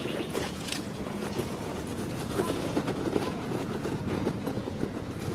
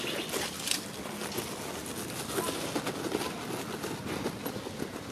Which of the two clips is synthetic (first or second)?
first